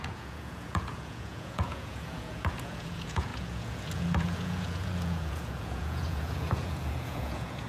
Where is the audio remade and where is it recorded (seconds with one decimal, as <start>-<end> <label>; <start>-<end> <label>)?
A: 0.0-7.7 remade